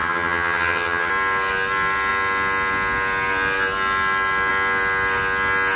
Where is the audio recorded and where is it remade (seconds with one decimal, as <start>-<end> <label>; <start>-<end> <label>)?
0.0-1.1 remade; 1.1-5.8 recorded